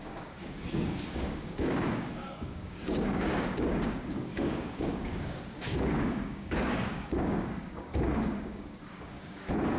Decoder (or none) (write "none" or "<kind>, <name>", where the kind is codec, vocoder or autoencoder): codec, DAC